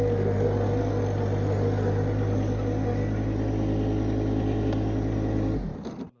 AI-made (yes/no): no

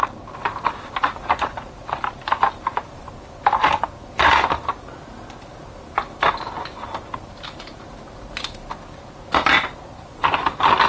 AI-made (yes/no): no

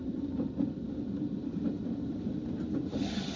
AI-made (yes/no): no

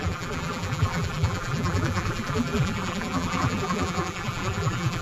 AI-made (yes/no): yes